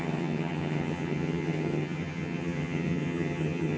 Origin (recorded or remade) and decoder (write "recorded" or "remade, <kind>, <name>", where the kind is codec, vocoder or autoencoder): remade, vocoder, HiFi-GAN